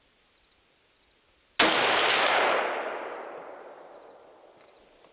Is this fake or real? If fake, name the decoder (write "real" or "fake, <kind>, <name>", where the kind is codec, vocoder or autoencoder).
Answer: real